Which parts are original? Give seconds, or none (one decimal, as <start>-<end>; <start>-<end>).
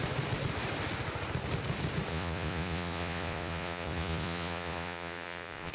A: 0.0-2.1